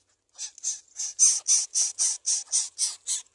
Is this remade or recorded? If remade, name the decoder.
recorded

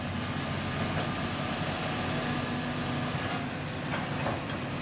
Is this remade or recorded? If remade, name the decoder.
recorded